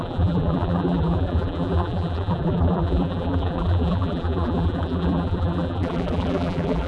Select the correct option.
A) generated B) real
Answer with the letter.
A